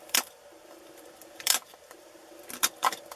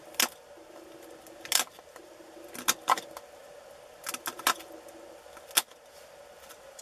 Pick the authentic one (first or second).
second